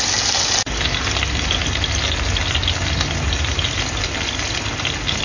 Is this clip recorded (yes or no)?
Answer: yes